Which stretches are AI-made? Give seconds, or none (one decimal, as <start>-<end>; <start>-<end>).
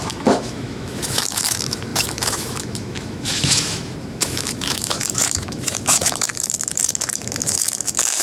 0.0-8.2